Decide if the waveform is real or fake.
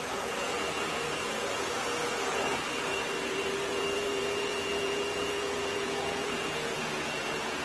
fake